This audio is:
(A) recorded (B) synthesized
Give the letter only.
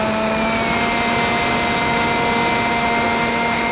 A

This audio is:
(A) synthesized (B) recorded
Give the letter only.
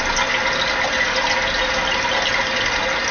B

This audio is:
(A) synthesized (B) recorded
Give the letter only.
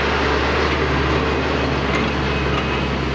B